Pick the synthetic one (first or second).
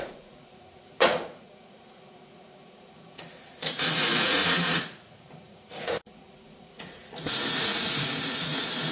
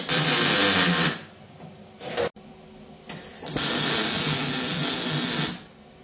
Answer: first